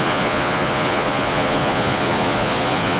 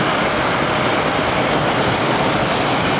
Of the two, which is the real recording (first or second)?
second